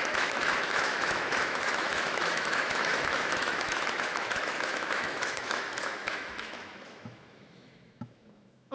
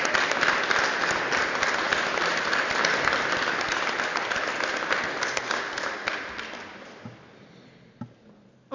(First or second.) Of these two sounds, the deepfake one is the first